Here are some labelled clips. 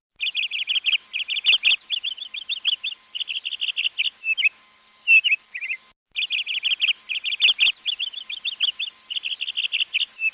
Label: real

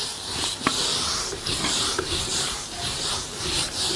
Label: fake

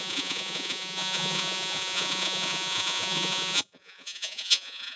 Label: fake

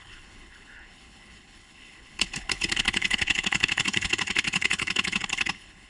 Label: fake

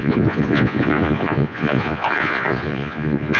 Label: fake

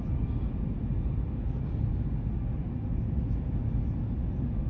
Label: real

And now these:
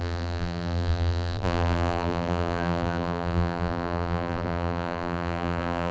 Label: fake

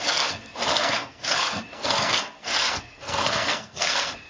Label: fake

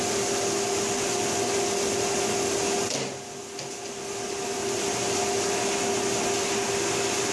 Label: real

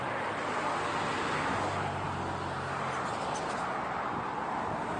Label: real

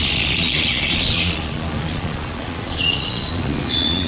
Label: fake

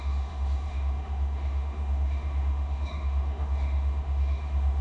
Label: fake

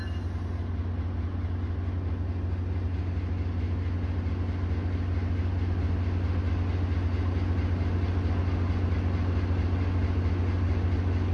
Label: real